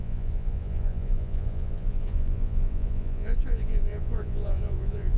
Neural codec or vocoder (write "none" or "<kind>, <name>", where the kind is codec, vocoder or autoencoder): vocoder, Vocos